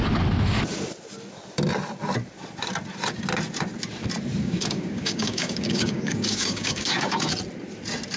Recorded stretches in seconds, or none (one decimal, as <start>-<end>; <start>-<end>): 0.0-4.4; 7.3-8.2